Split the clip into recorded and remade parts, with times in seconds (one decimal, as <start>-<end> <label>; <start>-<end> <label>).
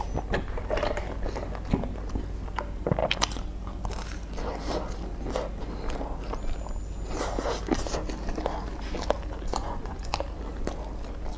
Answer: 0.0-9.6 recorded; 9.6-10.1 remade; 10.1-11.4 recorded